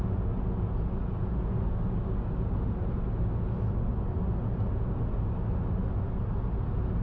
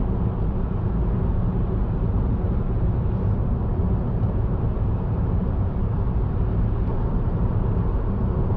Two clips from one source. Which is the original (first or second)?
first